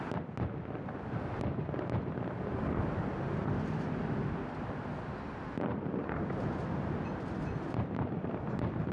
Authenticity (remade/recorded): recorded